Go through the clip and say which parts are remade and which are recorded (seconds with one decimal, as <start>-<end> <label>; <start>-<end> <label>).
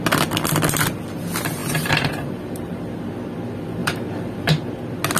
0.0-1.6 recorded; 1.6-2.8 remade; 2.8-3.8 recorded; 3.8-4.5 remade; 4.5-5.2 recorded